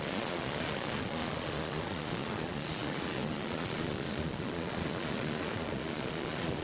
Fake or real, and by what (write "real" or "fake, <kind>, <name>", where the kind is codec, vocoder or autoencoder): fake, vocoder, Vocos